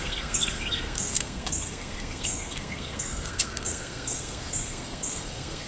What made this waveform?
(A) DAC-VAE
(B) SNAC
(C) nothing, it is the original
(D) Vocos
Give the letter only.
B